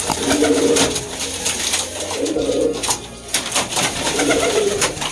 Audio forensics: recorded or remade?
remade